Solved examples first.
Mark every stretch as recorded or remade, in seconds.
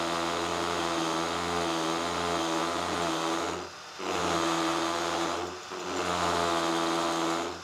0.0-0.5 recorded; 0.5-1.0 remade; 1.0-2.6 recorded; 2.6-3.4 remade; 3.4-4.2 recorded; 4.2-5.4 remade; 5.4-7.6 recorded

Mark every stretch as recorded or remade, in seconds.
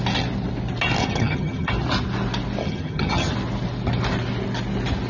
0.0-1.0 recorded; 1.0-1.7 remade; 1.7-2.6 recorded; 2.6-3.3 remade; 3.3-5.1 recorded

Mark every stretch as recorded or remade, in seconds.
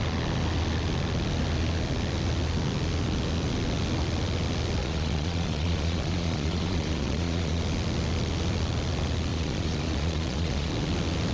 0.0-4.8 recorded; 4.8-7.6 remade; 7.6-9.3 recorded; 9.3-10.7 remade; 10.7-11.3 recorded